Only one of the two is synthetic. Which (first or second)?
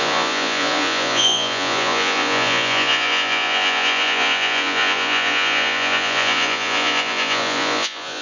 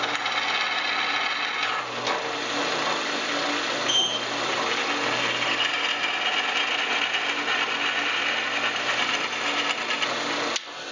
first